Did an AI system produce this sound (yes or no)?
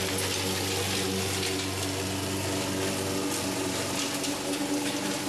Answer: no